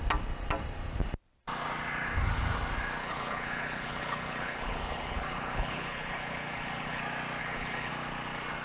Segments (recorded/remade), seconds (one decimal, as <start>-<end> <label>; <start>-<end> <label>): 0.0-3.0 recorded; 3.0-7.0 remade; 7.0-7.4 recorded; 7.4-7.9 remade; 7.9-8.6 recorded